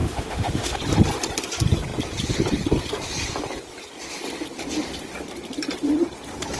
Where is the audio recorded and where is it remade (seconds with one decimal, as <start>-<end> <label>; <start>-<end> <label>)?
0.0-0.8 remade; 0.8-6.6 recorded

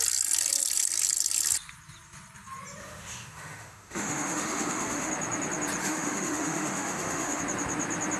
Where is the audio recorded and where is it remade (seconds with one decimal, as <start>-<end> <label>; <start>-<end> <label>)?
0.0-2.8 recorded; 2.8-5.1 remade; 5.1-5.8 recorded; 5.8-7.4 remade; 7.4-8.2 recorded